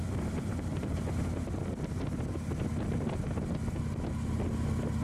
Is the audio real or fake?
real